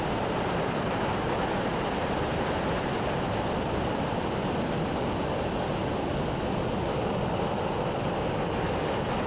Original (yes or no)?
yes